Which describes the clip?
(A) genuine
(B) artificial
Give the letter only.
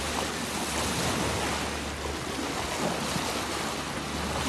A